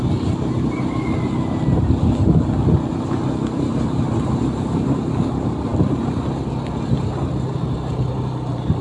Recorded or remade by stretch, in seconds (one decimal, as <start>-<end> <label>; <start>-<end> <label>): 0.0-8.8 recorded

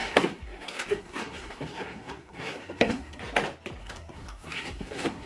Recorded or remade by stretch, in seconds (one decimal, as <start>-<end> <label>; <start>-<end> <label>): 0.0-3.2 remade; 3.2-3.8 recorded; 3.8-5.3 remade

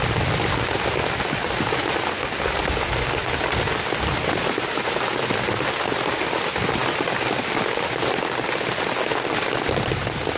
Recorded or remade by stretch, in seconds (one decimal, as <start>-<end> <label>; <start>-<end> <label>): 0.0-10.4 recorded

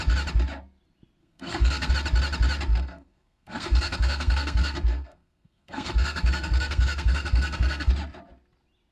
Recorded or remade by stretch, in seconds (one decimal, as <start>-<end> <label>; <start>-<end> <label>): 0.0-1.2 recorded; 1.2-1.9 remade; 1.9-2.7 recorded; 2.7-7.9 remade; 7.9-8.9 recorded

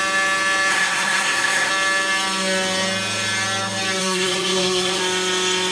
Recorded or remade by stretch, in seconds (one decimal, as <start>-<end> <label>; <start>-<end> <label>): 0.0-0.7 recorded; 0.7-1.7 remade; 1.7-4.0 recorded; 4.0-5.0 remade; 5.0-5.7 recorded

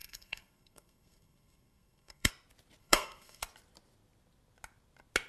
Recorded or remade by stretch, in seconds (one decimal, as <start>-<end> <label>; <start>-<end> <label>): 0.0-2.3 remade; 2.3-2.8 recorded; 2.8-3.4 remade; 3.4-5.3 recorded

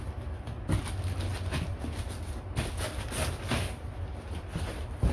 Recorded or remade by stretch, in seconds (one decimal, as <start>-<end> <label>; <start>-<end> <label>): 0.0-5.1 recorded